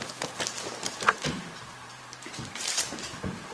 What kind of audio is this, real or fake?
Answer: fake